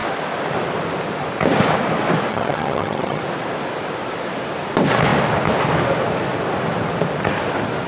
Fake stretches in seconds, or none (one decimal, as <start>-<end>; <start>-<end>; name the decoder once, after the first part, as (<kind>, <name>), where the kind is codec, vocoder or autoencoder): 2.3-3.2 (vocoder, HiFi-GAN)